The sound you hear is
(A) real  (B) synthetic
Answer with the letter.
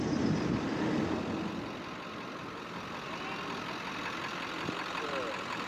A